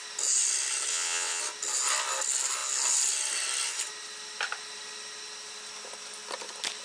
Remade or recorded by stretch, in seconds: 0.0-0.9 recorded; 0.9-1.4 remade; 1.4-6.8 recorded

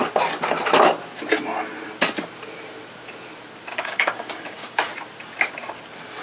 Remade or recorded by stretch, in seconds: 0.0-3.7 recorded; 3.7-4.9 remade; 4.9-6.2 recorded

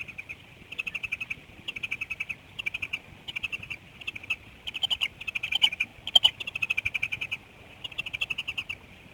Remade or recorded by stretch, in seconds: 0.0-9.1 recorded

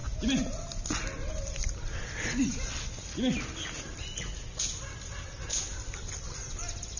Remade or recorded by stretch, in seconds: 0.0-7.0 recorded

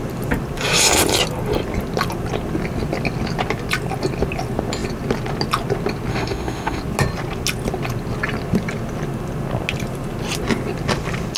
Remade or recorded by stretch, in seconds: 0.0-6.1 recorded; 6.1-6.8 remade; 6.8-11.4 recorded

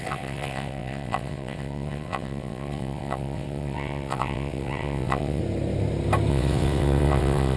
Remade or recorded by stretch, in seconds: 0.0-5.4 remade; 5.4-6.3 recorded; 6.3-7.6 remade

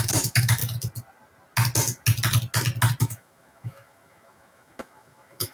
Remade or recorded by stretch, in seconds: 0.0-0.6 remade; 0.6-3.0 recorded; 3.0-5.5 remade

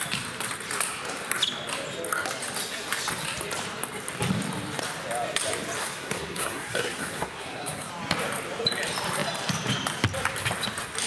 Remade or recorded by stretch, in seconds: 0.0-5.8 recorded; 5.8-7.9 remade; 7.9-11.1 recorded